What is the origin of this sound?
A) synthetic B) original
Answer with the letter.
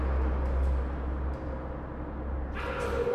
B